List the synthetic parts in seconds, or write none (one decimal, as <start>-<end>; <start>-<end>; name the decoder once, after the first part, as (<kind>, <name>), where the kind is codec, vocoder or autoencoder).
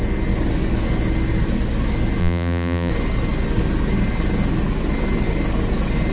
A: 2.2-2.9 (vocoder, BigVGAN v2)